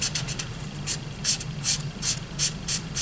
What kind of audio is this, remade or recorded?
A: remade